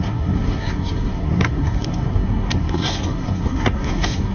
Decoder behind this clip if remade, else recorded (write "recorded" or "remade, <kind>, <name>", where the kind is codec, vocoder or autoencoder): remade, codec, SNAC